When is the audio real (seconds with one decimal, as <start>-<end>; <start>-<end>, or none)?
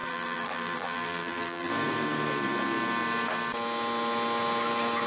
1.7-5.1